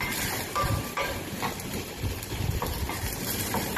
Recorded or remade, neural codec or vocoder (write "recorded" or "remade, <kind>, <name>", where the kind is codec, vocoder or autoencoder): remade, vocoder, BigVGAN v2